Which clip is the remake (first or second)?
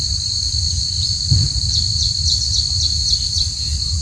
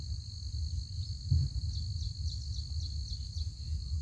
first